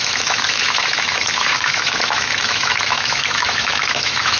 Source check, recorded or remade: remade